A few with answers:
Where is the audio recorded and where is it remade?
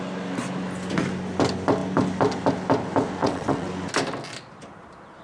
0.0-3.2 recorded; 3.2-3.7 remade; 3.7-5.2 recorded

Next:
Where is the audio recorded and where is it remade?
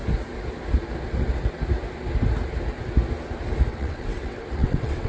0.0-3.7 recorded; 3.7-5.1 remade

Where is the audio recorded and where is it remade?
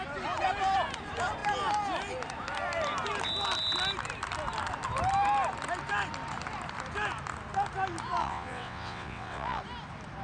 0.0-8.2 recorded; 8.2-9.6 remade; 9.6-10.2 recorded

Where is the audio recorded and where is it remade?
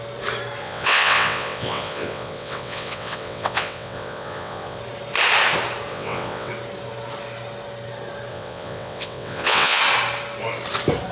0.0-0.6 recorded; 0.6-4.8 remade; 4.8-5.9 recorded; 5.9-6.5 remade; 6.5-8.3 recorded; 8.3-9.8 remade; 9.8-11.1 recorded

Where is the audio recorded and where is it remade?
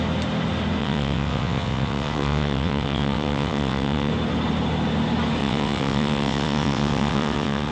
0.0-0.8 recorded; 0.8-4.1 remade; 4.1-5.4 recorded; 5.4-7.7 remade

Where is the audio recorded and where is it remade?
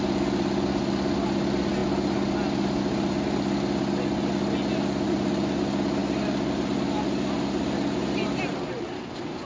0.0-9.5 recorded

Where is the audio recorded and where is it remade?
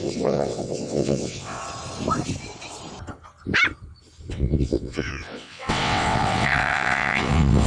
0.0-1.6 remade; 1.6-4.3 recorded; 4.3-7.7 remade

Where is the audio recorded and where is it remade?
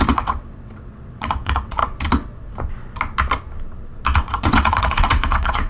0.0-1.8 remade; 1.8-4.2 recorded; 4.2-5.7 remade